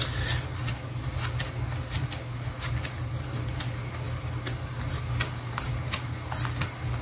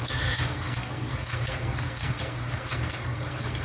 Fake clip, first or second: second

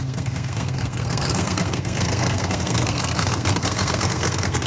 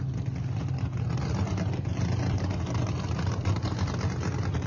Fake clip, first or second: first